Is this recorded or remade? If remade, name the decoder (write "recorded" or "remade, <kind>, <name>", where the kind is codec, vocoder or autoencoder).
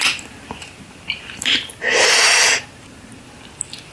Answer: recorded